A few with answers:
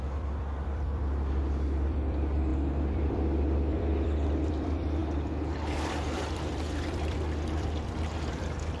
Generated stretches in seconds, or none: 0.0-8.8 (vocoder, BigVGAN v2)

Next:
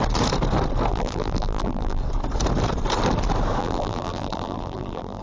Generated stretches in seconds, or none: 0.9-2.0 (vocoder, BigVGAN v2); 3.6-5.2